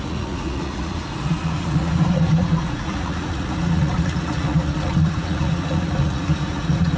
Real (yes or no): no